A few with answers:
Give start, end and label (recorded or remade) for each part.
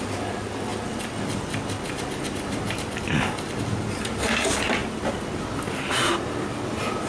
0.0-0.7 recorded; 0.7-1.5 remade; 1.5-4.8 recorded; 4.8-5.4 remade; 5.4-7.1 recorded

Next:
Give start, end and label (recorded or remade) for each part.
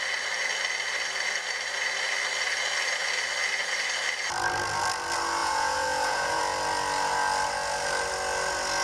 0.0-5.4 recorded; 5.4-6.4 remade; 6.4-8.8 recorded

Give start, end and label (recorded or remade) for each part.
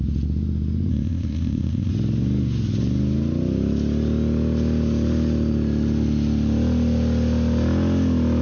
0.0-0.9 recorded; 0.9-1.9 remade; 1.9-8.4 recorded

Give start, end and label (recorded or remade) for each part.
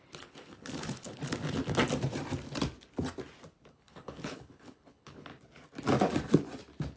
0.0-1.2 remade; 1.2-3.7 recorded; 3.7-5.3 remade; 5.3-7.0 recorded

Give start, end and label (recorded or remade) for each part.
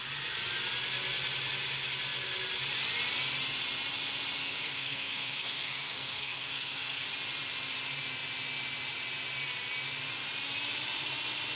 0.0-4.4 recorded; 4.4-7.1 remade; 7.1-11.6 recorded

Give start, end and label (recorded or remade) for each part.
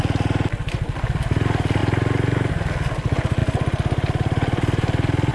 0.0-3.4 recorded; 3.4-5.3 remade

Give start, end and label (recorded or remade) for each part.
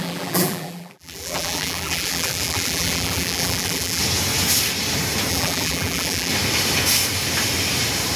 0.0-4.0 remade; 4.0-5.3 recorded; 5.3-6.3 remade; 6.3-8.2 recorded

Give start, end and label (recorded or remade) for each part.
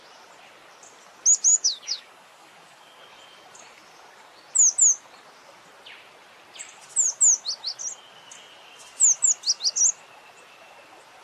0.0-1.5 recorded; 1.5-3.0 remade; 3.0-11.2 recorded